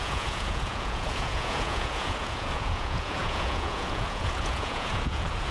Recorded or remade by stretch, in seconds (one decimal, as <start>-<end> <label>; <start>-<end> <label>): 0.0-5.5 remade